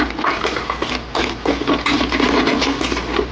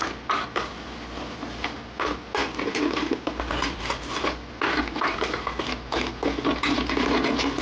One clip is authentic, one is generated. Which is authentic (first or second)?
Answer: second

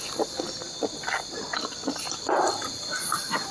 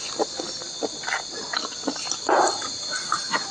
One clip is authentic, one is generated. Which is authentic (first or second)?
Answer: second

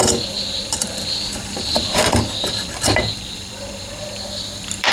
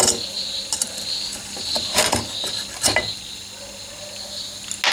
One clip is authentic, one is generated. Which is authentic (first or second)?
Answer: second